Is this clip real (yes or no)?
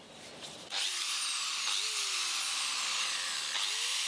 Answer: yes